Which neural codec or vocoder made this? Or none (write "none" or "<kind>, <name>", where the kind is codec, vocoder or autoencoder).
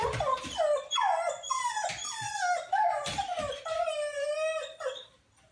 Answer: none